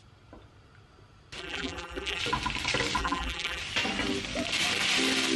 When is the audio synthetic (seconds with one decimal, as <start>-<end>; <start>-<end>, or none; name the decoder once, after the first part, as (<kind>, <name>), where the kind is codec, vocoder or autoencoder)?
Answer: 1.4-2.2 (vocoder, BigVGAN v2); 3.0-3.6